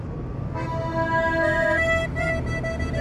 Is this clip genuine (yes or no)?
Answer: yes